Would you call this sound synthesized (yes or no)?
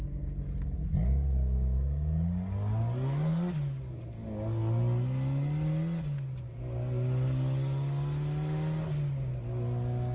no